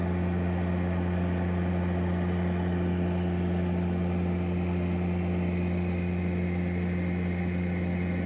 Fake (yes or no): no